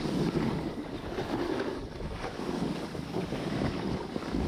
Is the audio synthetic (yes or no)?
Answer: yes